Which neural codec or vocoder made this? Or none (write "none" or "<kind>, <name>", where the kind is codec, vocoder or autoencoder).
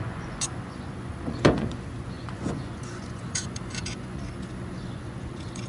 vocoder, Vocos